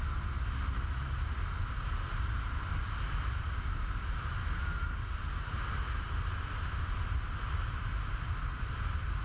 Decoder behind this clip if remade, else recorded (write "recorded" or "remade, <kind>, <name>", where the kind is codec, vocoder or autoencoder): recorded